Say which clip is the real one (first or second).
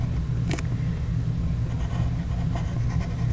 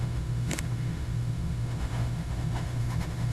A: first